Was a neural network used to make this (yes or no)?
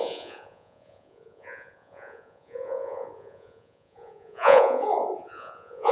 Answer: yes